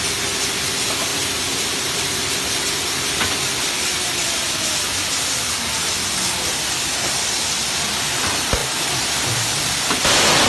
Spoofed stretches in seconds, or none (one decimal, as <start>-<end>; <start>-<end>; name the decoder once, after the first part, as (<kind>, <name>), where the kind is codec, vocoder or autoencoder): 1.1-2.1 (vocoder, BigVGAN v2); 8.6-9.3